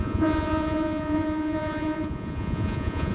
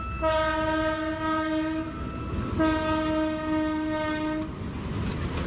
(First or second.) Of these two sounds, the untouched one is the second